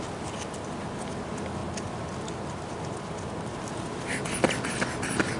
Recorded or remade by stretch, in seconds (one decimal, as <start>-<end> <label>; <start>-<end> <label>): 0.0-5.4 recorded